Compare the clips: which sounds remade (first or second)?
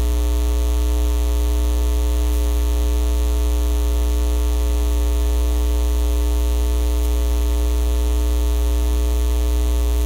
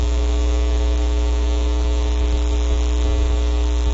second